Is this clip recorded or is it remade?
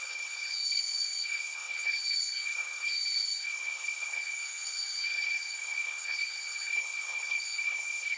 remade